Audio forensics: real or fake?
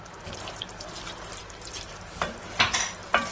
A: fake